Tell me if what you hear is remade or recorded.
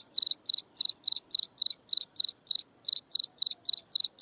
recorded